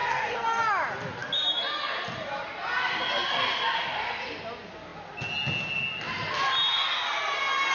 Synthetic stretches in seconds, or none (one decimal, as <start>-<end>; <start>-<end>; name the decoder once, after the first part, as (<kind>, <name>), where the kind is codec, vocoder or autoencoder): 0.0-0.6 (codec, SNAC)